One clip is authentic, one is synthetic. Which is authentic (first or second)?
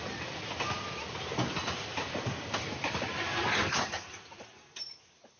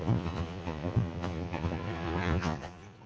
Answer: first